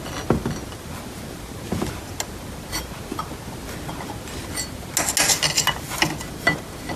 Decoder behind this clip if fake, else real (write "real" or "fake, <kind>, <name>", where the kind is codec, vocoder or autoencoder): real